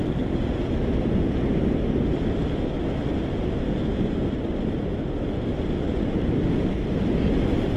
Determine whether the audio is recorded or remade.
recorded